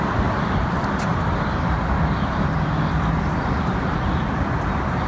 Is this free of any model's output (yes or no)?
yes